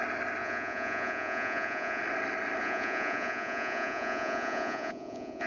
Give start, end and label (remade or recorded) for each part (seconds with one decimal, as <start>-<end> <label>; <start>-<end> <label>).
0.0-0.4 recorded; 0.4-2.0 remade; 2.0-2.6 recorded; 2.6-5.5 remade